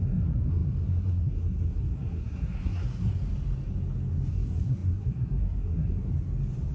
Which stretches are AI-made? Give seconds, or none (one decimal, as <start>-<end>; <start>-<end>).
0.0-3.1; 4.3-6.1